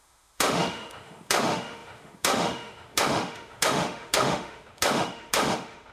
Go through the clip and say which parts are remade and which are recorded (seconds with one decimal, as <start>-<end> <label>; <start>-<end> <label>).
0.0-5.9 remade